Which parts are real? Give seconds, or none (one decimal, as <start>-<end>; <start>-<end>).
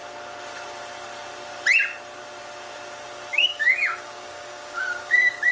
0.0-3.3